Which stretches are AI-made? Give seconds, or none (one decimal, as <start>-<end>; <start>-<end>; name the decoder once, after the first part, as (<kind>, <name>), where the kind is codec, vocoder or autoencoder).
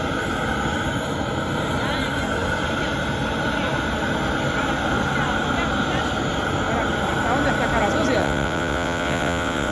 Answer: 8.2-9.7 (vocoder, WaveNeXt)